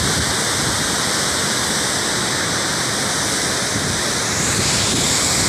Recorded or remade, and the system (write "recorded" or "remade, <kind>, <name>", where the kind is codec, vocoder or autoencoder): remade, vocoder, BigVGAN v2